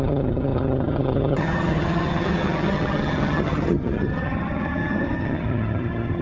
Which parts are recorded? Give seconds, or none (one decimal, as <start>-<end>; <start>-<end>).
none